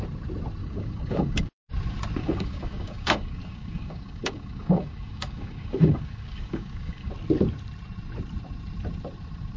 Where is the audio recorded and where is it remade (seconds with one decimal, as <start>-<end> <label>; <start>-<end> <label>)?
0.0-0.6 recorded; 0.6-1.7 remade; 1.7-2.2 recorded; 2.2-7.1 remade; 7.1-9.6 recorded